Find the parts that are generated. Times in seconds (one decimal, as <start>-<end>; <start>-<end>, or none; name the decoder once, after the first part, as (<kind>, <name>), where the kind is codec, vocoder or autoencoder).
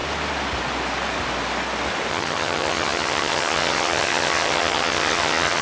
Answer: 2.1-5.6 (vocoder, HiFi-GAN)